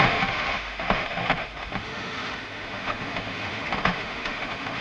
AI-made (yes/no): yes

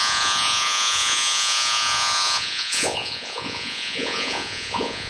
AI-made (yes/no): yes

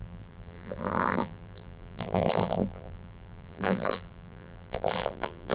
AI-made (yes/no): yes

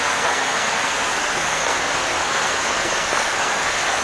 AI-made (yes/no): yes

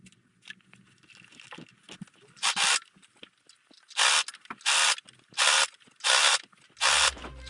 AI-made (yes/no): no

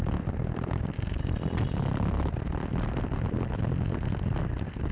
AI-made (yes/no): no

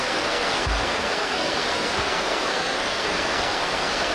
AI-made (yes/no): yes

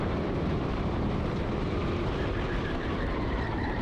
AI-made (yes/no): yes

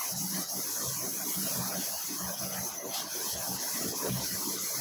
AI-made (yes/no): yes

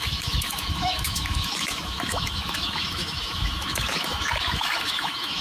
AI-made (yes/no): yes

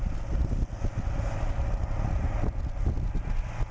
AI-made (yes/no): no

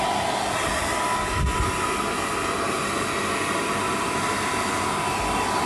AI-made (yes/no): no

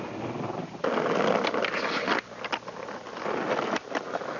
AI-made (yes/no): no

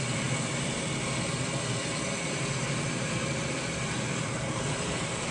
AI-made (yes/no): yes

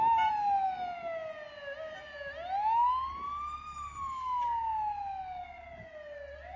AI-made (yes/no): no